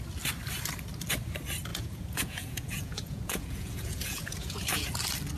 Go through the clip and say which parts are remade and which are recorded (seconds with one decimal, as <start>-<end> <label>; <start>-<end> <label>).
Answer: 0.0-1.7 recorded; 1.7-4.9 remade; 4.9-5.4 recorded